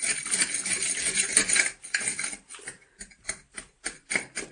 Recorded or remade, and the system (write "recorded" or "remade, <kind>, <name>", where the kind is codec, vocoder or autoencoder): recorded